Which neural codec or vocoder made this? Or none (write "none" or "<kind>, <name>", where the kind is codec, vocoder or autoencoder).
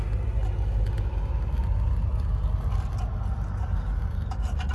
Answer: none